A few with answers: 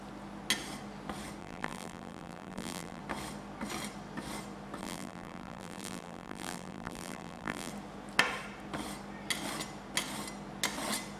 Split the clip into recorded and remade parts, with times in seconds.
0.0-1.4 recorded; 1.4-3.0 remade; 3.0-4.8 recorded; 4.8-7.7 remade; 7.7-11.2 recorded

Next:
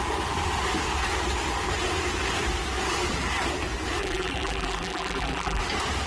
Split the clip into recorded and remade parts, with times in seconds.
0.0-4.0 recorded; 4.0-5.6 remade; 5.6-6.1 recorded

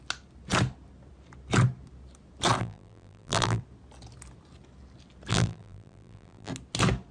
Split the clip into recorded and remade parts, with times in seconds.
0.0-2.6 recorded; 2.6-3.6 remade; 3.6-5.3 recorded; 5.3-6.5 remade; 6.5-7.1 recorded